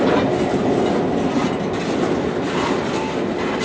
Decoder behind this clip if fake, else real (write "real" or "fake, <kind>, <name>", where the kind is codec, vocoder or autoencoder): real